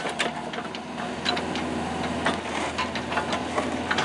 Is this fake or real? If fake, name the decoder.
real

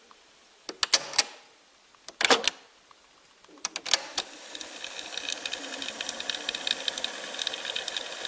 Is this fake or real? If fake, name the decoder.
real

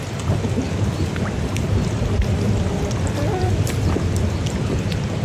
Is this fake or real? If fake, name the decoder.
fake, vocoder, BigVGAN v2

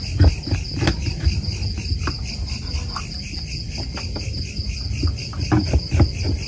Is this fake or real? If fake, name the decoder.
real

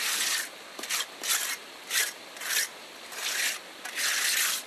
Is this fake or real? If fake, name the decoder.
real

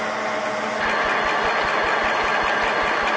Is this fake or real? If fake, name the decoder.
real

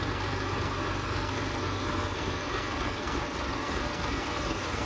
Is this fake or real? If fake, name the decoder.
fake, codec, SNAC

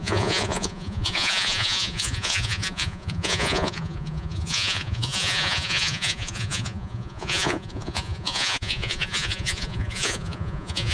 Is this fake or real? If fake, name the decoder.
fake, vocoder, Vocos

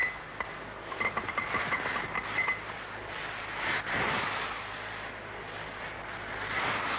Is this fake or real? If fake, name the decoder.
real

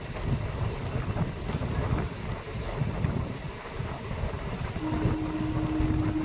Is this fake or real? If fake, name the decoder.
real